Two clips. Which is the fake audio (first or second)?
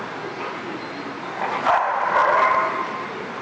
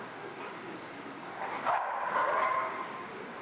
second